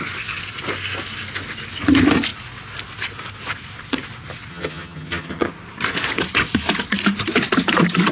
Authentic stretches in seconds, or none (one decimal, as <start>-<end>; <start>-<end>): 0.0-4.5; 5.5-8.1